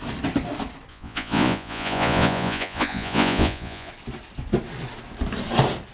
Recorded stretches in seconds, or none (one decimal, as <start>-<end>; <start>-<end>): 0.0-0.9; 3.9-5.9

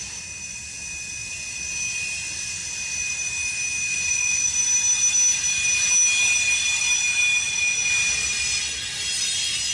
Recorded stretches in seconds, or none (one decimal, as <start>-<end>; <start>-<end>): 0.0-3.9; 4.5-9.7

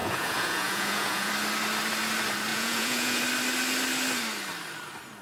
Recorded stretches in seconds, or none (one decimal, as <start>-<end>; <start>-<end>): 1.3-2.5; 3.2-5.2

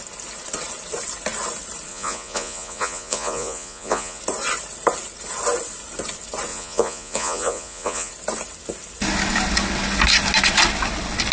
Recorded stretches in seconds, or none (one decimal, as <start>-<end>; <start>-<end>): 0.0-1.9; 4.2-6.5; 8.1-11.3